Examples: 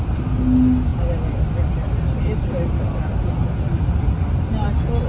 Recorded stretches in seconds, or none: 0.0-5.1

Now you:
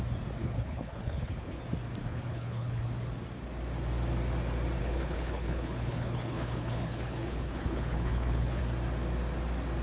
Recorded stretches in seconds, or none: 0.0-0.4; 1.6-2.0; 2.8-4.8; 8.6-9.8

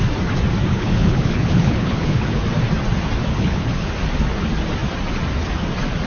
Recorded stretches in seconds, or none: 0.0-0.7; 2.4-3.3; 3.9-6.1

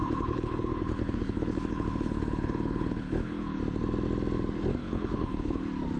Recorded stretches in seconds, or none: 3.6-4.8; 5.6-6.0

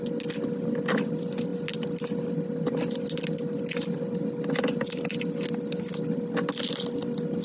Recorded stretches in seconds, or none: 0.0-7.4